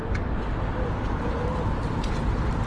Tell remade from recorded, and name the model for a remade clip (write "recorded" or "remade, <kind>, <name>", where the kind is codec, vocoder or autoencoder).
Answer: recorded